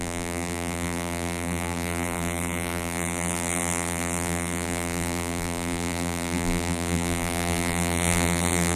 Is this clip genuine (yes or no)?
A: no